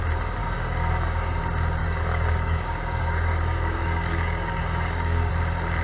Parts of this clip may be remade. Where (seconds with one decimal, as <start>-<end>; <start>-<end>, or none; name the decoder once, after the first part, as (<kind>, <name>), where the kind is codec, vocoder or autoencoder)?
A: 0.4-1.4 (codec, DAC); 1.8-5.3